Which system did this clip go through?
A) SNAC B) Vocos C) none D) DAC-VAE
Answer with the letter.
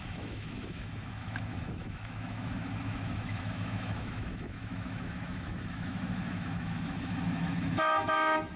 D